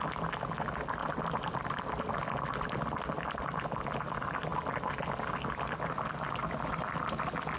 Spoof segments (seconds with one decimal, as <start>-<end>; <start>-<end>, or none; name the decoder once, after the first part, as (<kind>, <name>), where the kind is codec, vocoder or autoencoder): 1.0-1.8 (vocoder, BigVGAN v2)